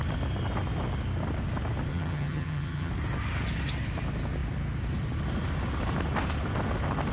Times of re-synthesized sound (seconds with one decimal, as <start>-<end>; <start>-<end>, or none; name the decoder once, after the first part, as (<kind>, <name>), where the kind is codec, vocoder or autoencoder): 1.9-2.9 (vocoder, HiFi-GAN)